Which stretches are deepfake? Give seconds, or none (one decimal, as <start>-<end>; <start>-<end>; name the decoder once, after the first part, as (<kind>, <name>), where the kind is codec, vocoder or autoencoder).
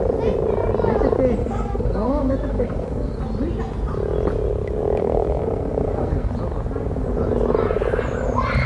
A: 1.4-3.2 (codec, SNAC); 5.0-6.3